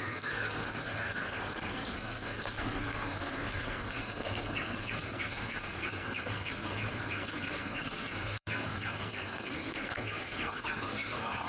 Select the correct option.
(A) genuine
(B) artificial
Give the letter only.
B